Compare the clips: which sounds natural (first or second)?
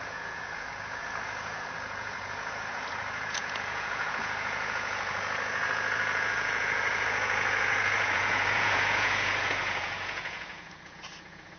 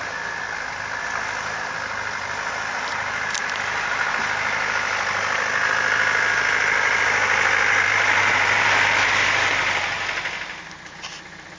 second